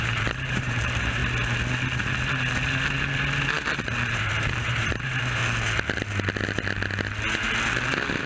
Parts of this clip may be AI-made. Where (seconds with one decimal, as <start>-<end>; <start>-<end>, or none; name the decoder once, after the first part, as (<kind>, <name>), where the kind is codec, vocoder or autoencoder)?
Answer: 0.0-1.2 (vocoder, BigVGAN v2); 4.1-5.4